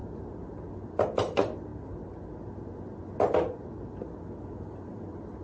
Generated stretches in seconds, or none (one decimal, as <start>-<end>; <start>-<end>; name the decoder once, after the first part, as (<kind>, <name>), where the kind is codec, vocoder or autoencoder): none

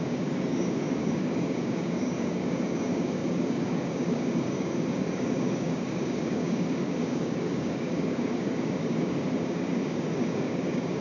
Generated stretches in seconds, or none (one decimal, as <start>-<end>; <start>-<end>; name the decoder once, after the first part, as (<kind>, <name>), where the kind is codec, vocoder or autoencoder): 0.0-11.0 (codec, DAC)

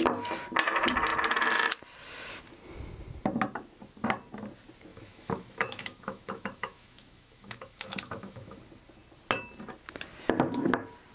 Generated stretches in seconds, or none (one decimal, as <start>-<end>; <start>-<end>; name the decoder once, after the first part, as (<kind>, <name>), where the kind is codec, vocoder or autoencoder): 4.9-8.6 (autoencoder, DAC-VAE)

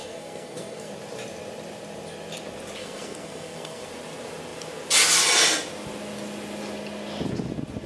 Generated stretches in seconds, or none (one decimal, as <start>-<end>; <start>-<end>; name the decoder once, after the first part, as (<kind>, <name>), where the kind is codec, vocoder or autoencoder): 0.0-0.9 (codec, SNAC); 2.8-3.9

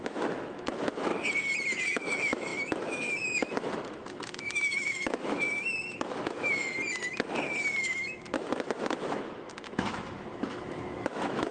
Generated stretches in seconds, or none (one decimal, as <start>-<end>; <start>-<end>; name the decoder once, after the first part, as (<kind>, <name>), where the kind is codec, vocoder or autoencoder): 0.0-1.1 (autoencoder, DAC-VAE); 1.8-6.6; 7.8-11.5

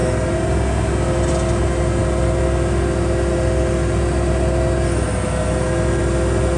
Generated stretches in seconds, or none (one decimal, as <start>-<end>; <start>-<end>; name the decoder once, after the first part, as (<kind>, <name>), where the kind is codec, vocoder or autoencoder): none

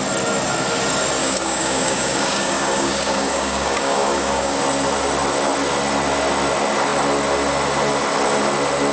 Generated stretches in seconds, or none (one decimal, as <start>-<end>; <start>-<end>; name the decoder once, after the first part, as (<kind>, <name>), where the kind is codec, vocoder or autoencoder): 1.2-4.6 (codec, DAC)